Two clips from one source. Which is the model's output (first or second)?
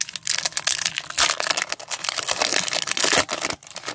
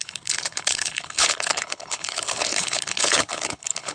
second